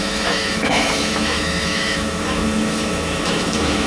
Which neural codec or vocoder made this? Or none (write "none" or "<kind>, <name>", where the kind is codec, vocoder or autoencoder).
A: autoencoder, DAC-VAE